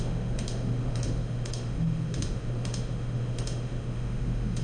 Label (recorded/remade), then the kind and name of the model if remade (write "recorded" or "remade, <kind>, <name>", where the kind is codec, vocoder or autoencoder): remade, autoencoder, DAC-VAE